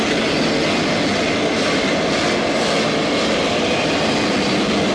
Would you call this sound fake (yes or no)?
no